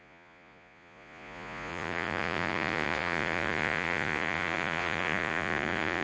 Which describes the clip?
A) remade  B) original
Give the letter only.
A